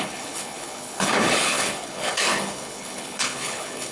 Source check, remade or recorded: remade